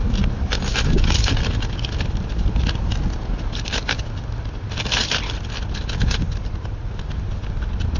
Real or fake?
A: real